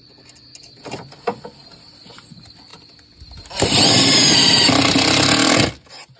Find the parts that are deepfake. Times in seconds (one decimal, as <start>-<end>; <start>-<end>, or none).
none